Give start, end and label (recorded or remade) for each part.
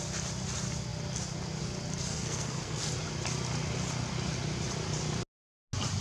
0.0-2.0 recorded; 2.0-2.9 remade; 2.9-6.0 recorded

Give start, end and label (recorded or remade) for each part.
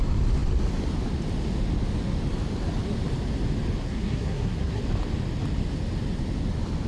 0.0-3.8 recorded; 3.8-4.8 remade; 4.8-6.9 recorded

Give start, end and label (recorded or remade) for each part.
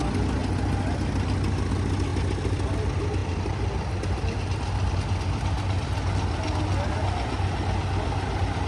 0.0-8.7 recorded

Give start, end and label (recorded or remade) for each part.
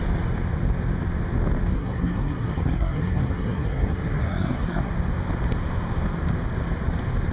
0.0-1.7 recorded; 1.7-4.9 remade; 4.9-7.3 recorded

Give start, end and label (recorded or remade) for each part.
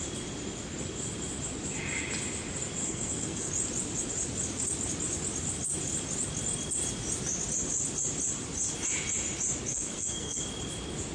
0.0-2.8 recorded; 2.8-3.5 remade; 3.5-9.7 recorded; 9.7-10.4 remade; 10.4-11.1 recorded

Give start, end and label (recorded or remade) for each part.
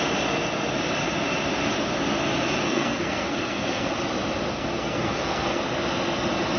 0.0-2.6 recorded; 2.6-3.9 remade; 3.9-4.5 recorded; 4.5-5.6 remade; 5.6-6.6 recorded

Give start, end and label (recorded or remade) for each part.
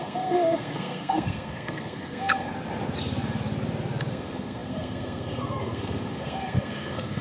0.0-2.5 remade; 2.5-4.1 recorded; 4.1-7.2 remade